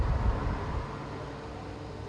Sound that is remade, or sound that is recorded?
recorded